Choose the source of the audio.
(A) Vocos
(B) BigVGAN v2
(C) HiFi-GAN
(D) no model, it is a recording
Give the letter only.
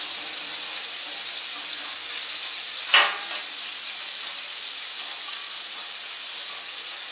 D